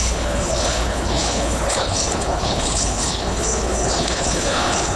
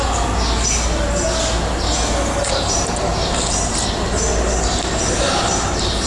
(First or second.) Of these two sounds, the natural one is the second